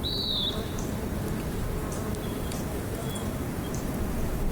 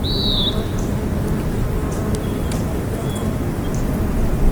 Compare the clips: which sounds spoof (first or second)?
first